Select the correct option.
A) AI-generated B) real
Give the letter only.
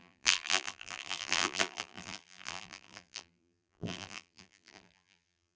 A